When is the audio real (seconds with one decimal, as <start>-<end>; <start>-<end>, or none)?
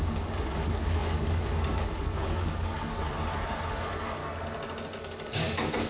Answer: 3.0-3.7; 4.2-5.0